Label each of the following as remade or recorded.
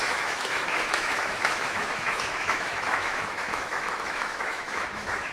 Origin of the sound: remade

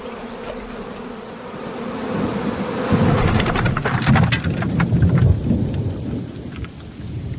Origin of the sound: recorded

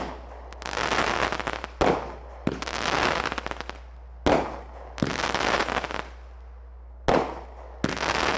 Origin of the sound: recorded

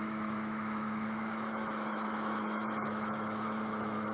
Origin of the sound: remade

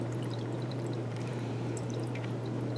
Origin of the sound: remade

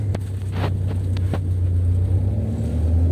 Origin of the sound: recorded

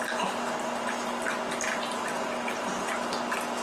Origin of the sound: recorded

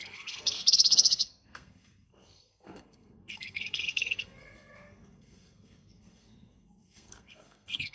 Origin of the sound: remade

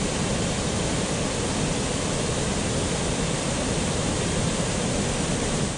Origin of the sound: remade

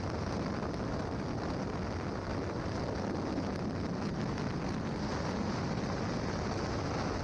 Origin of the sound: recorded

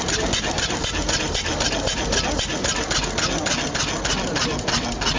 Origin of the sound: recorded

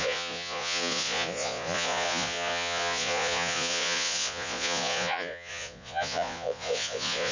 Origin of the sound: remade